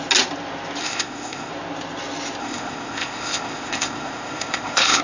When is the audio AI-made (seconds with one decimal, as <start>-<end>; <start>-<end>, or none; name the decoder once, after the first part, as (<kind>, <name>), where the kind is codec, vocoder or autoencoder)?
0.8-1.5 (codec, ZipCodec); 2.4-5.0